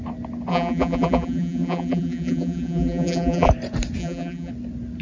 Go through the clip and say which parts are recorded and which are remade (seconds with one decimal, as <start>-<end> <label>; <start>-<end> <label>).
0.0-0.5 recorded; 0.5-3.5 remade; 3.5-4.0 recorded; 4.0-4.5 remade; 4.5-5.0 recorded